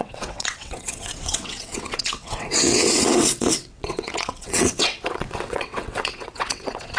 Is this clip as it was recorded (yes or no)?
no